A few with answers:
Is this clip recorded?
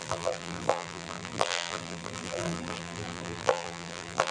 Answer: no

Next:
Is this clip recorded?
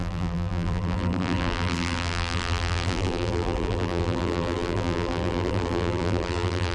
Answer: no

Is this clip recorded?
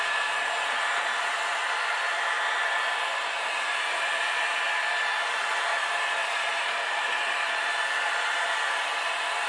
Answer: yes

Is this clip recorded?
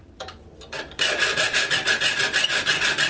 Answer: no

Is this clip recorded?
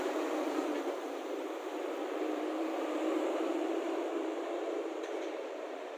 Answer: no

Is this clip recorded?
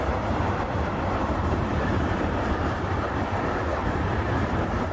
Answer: no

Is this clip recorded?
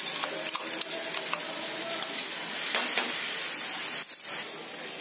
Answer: yes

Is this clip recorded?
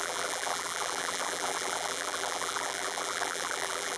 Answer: no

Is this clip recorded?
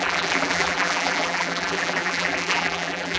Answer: no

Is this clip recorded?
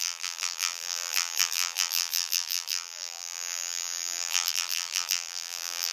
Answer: no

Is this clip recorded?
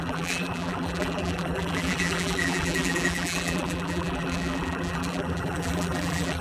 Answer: no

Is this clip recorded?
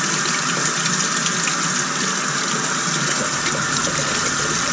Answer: yes